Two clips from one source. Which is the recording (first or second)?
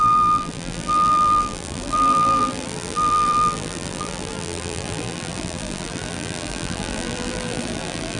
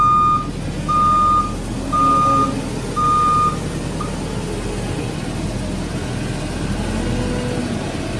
second